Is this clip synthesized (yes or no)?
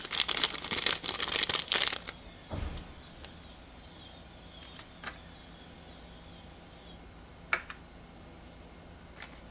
no